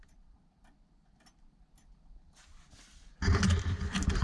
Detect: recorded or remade recorded